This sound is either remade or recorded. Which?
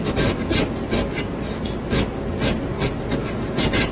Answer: recorded